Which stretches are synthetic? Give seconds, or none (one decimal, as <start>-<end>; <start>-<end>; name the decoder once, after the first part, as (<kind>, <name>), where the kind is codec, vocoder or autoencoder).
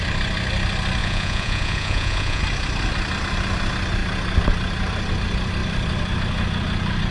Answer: 1.0-2.4 (vocoder, Vocos)